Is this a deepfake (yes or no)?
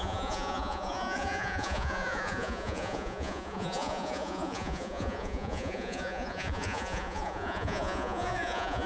yes